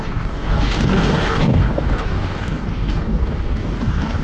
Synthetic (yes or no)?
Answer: yes